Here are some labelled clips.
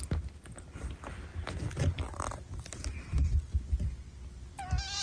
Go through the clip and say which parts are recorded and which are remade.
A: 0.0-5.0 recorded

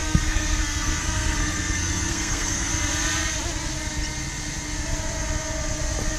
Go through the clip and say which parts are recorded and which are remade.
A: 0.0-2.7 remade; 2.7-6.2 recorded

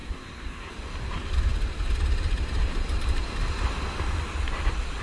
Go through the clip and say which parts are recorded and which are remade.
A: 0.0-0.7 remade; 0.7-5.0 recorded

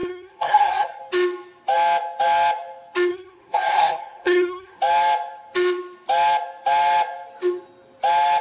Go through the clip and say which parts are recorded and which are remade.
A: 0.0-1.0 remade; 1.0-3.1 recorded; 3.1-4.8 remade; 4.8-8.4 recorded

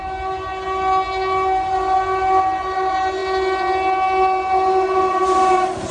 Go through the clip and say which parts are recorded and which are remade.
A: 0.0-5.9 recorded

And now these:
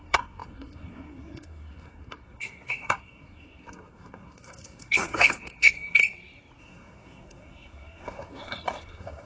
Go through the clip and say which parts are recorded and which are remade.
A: 0.0-6.0 remade; 6.0-6.6 recorded; 6.6-9.2 remade

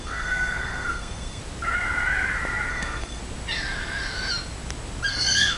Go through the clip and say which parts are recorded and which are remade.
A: 0.0-1.4 remade; 1.4-2.7 recorded; 2.7-3.2 remade; 3.2-5.1 recorded; 5.1-5.6 remade